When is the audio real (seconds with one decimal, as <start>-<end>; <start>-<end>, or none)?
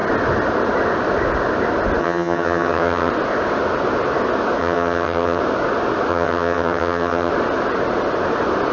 0.0-2.0; 3.1-4.6; 5.4-6.1; 7.3-8.7